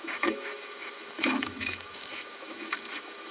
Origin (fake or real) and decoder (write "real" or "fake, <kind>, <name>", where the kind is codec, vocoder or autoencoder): fake, autoencoder, DAC-VAE